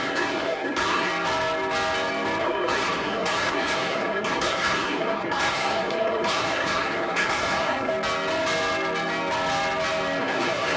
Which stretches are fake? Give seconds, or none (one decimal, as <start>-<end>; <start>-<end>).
0.0-1.1; 2.4-7.9; 10.2-10.8